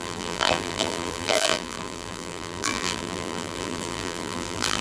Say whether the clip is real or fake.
fake